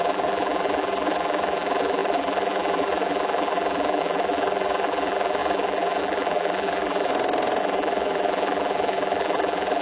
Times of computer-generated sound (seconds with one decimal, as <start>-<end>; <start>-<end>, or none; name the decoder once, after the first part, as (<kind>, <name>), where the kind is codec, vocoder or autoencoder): 0.0-7.1 (vocoder, BigVGAN v2); 7.6-9.8